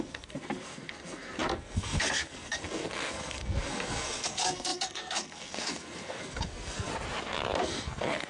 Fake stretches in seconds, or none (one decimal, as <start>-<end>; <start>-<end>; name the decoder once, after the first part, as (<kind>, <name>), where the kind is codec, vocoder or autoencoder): 0.0-6.9 (codec, SNAC); 7.6-8.3